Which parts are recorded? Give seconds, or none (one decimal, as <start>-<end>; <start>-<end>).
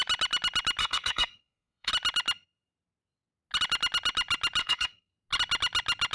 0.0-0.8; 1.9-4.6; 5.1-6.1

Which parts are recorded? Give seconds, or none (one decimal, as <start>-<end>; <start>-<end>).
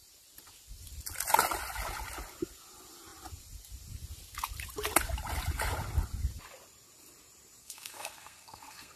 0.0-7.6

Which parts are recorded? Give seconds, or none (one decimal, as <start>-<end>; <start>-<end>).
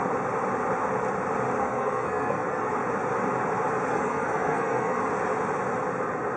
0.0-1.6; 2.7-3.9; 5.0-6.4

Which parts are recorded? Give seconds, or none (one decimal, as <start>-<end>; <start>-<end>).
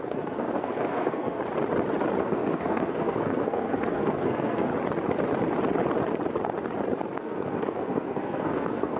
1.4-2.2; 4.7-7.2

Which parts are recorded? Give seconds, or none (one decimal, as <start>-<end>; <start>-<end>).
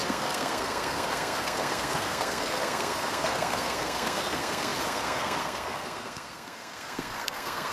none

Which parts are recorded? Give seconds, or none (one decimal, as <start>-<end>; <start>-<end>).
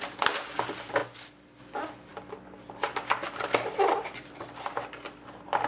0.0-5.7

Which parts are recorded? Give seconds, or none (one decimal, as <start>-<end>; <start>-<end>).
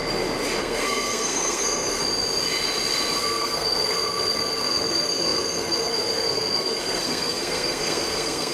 0.0-0.6; 2.0-3.2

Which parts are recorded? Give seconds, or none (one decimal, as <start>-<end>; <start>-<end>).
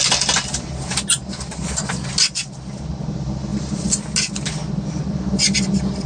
0.0-6.1